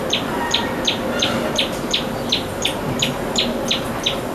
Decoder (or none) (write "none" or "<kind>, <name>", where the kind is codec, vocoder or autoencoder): none